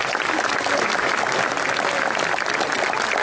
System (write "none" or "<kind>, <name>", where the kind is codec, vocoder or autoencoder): none